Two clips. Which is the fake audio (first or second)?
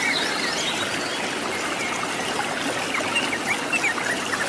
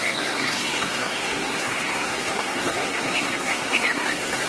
second